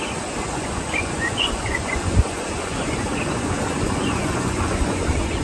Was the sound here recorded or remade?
remade